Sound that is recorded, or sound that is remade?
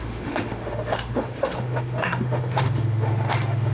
remade